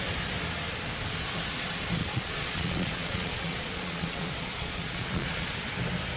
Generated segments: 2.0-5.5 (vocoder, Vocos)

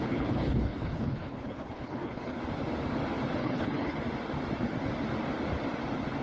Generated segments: 0.0-2.4 (codec, HILCodec); 3.4-4.0

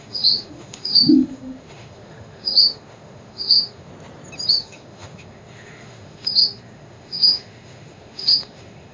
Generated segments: 0.0-3.9 (autoencoder, DAC-VAE); 4.5-8.9

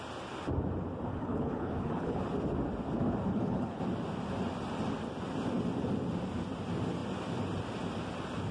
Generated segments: 1.1-2.2 (codec, HILCodec); 3.3-3.8

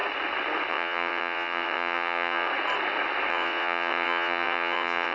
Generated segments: 0.7-2.5 (vocoder, WaveNeXt); 3.3-5.1

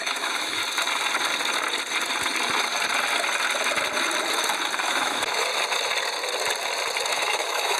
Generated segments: 0.0-0.6 (autoencoder, DAC-VAE); 4.9-5.5; 7.1-7.8